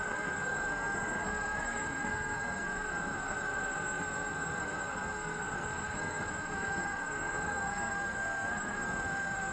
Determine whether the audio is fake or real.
fake